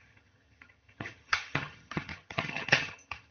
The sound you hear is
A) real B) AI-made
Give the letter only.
B